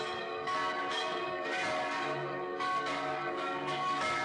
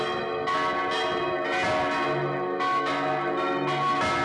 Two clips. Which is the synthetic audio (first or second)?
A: first